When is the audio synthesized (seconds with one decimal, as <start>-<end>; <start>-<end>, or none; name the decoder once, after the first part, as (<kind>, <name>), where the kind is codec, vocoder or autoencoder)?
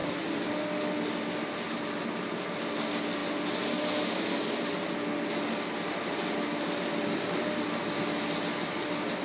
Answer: none